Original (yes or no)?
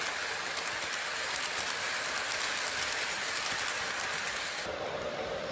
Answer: yes